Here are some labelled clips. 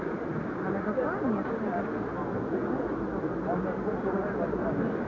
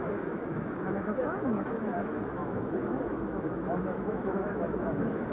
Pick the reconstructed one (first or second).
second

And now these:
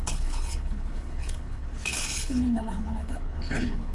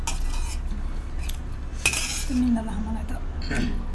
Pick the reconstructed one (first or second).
first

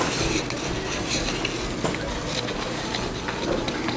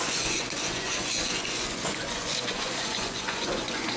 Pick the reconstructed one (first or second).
second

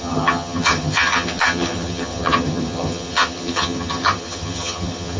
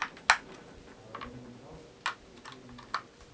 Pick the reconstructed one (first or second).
first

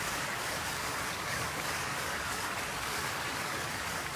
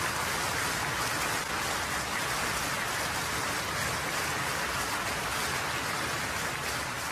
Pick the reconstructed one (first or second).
first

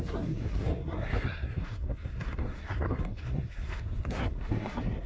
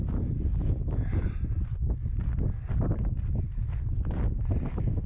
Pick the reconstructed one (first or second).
first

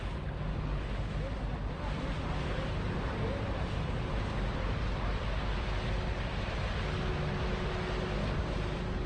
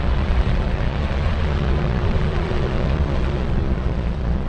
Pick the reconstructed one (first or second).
second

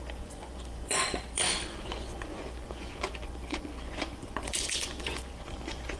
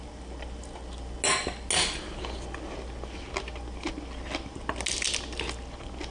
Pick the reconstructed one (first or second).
first